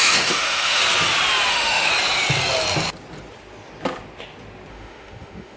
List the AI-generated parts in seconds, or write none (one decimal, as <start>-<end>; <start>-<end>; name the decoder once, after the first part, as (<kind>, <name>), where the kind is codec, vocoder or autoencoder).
0.0-0.8 (autoencoder, DAC-VAE); 1.5-1.9; 4.7-5.6